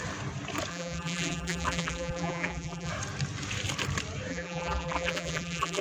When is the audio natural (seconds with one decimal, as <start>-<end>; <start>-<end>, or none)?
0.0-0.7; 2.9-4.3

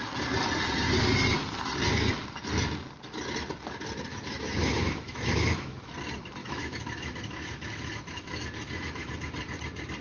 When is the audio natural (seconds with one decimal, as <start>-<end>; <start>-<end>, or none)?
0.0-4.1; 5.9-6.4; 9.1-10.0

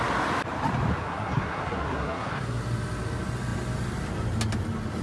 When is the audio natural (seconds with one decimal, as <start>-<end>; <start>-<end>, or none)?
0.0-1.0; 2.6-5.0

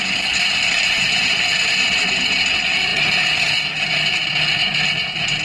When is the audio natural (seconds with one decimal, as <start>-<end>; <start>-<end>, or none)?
0.0-5.4